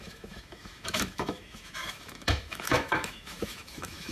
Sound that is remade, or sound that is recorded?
remade